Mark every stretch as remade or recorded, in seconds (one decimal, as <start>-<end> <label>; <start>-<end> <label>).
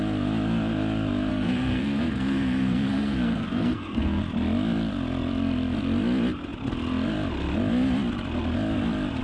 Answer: 0.0-1.3 recorded; 1.3-4.2 remade; 4.2-9.2 recorded